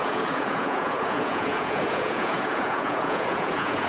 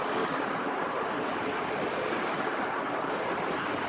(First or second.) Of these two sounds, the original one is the second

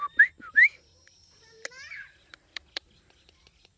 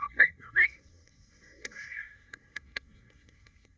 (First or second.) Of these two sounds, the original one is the first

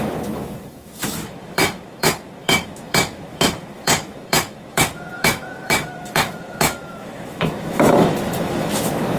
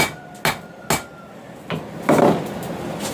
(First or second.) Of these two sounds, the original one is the second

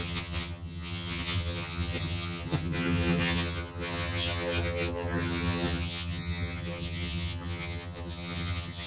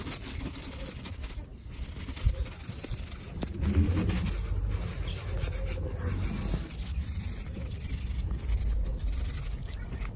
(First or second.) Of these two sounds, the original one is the second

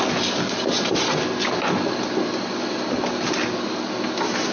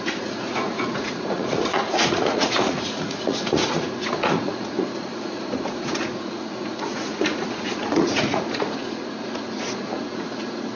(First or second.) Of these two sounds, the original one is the first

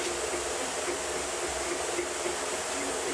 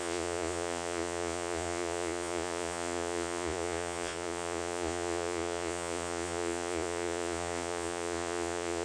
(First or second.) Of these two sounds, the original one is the first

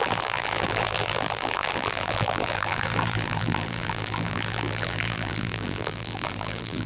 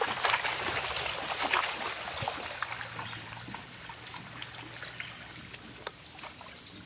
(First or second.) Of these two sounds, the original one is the second